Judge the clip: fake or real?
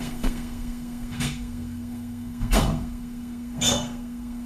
fake